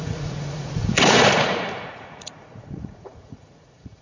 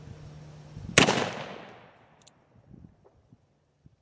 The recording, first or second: second